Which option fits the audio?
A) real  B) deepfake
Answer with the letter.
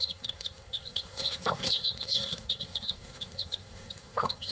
B